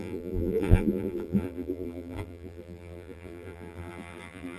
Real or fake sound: fake